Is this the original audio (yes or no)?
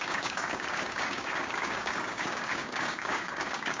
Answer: no